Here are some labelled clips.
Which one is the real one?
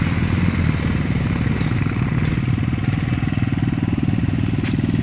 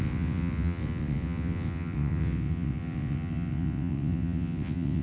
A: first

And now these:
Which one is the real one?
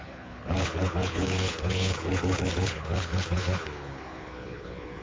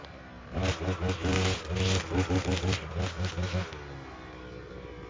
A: second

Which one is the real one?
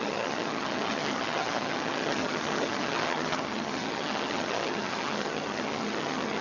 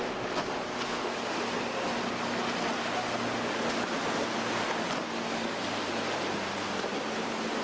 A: second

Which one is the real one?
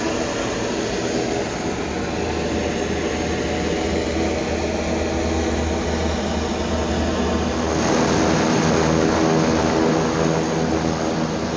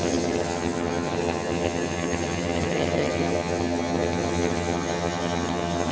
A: first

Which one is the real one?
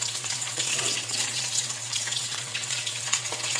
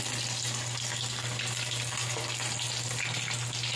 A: second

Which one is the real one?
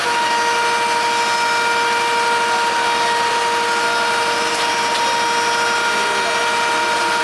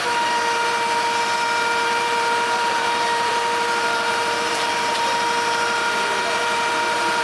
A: first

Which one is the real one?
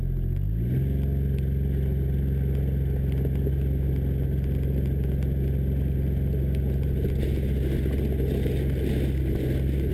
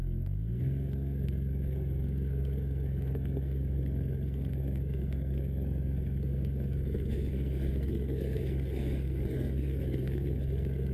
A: first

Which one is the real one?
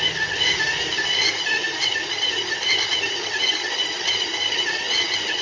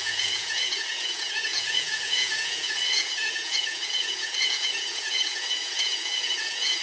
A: first